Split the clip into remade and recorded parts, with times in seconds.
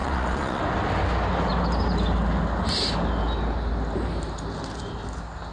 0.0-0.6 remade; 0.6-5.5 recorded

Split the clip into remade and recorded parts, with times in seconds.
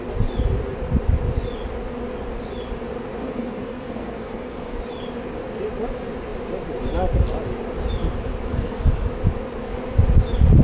0.0-3.2 recorded; 3.2-4.8 remade; 4.8-8.5 recorded; 8.5-9.1 remade; 9.1-10.6 recorded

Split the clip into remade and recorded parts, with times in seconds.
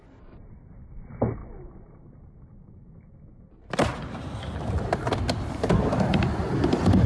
0.0-7.1 recorded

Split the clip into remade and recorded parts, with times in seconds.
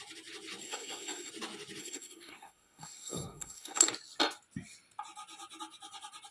0.0-0.6 recorded; 0.6-1.3 remade; 1.3-1.8 recorded; 1.8-3.9 remade; 3.9-6.3 recorded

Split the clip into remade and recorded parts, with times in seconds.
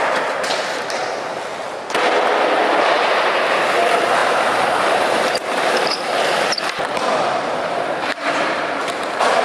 0.0-1.0 remade; 1.0-2.7 recorded; 2.7-9.4 remade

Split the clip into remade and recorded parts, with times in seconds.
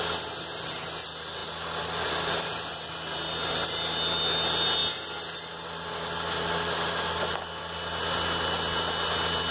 0.0-9.5 recorded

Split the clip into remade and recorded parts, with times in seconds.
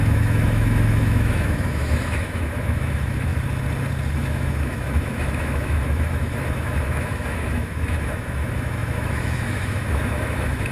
0.0-3.3 remade; 3.3-4.1 recorded; 4.1-10.7 remade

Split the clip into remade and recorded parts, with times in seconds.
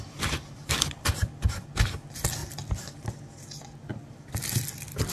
0.0-5.1 recorded